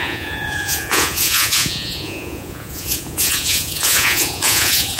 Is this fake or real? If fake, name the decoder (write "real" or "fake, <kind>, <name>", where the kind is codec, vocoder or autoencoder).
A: fake, vocoder, Vocos